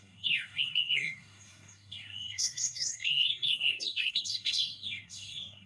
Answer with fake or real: fake